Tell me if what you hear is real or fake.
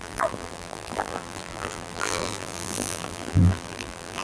fake